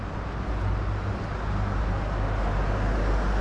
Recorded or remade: recorded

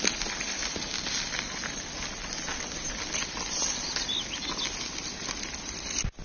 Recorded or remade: recorded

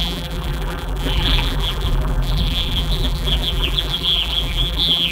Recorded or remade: remade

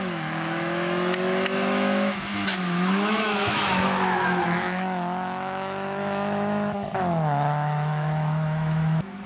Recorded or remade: remade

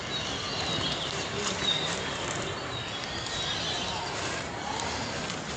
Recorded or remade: recorded